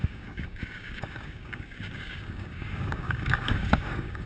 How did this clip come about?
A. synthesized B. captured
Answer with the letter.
A